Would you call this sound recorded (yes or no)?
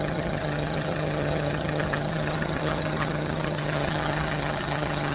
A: no